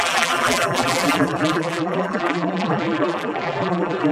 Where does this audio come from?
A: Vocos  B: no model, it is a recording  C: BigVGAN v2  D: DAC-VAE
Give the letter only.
C